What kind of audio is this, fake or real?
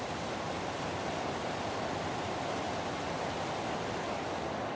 real